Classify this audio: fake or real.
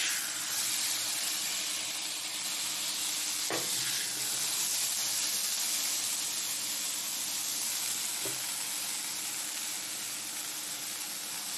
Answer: real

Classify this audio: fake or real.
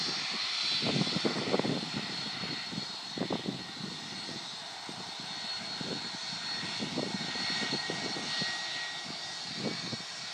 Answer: real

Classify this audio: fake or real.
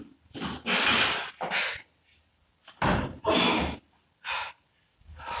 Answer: real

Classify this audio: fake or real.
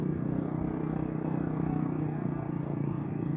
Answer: fake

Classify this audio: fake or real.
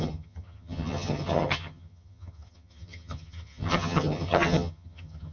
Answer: fake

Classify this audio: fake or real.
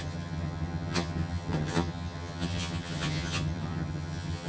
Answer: fake